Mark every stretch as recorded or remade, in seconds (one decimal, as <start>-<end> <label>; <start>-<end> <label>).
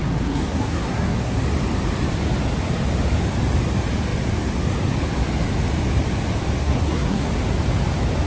0.0-1.4 remade; 1.4-6.6 recorded; 6.6-7.3 remade; 7.3-8.3 recorded